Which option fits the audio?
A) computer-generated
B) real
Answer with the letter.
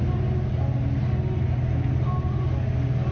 B